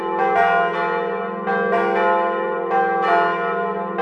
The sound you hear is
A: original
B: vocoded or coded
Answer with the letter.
A